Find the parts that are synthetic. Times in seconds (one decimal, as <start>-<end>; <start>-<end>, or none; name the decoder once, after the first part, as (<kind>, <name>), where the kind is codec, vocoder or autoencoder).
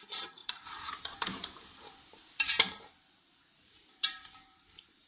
0.0-5.1 (vocoder, BigVGAN v2)